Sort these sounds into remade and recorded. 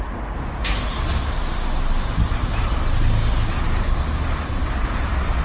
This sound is recorded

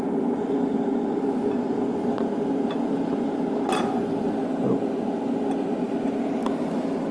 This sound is recorded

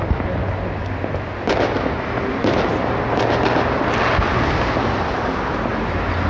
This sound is recorded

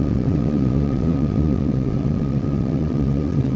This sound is remade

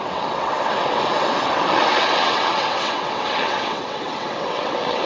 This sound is remade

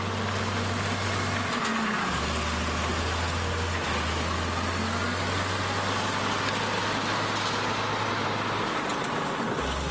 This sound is recorded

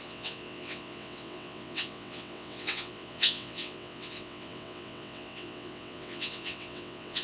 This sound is remade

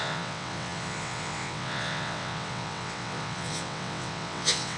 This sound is remade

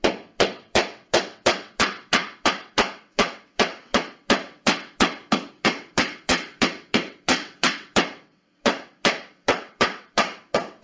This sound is remade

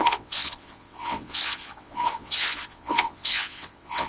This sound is remade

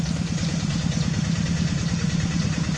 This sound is recorded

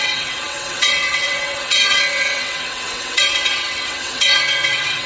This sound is remade